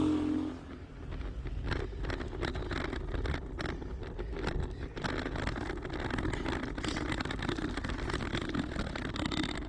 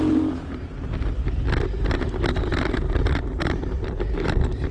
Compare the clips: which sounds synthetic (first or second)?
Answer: second